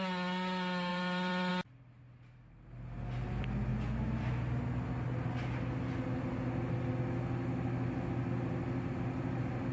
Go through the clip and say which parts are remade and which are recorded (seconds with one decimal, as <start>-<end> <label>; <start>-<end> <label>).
0.0-0.9 recorded; 0.9-1.5 remade; 1.5-9.7 recorded